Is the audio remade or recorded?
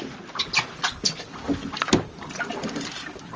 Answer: recorded